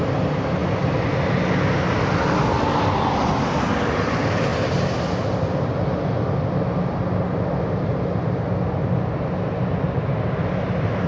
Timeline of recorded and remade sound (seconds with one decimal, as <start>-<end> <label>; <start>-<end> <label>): 0.0-11.1 recorded